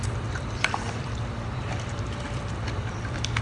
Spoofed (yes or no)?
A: yes